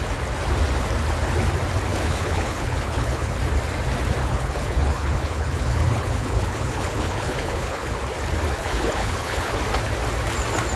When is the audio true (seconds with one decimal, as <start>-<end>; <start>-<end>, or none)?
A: 0.0-1.9; 3.4-4.2; 7.9-8.6; 9.6-10.8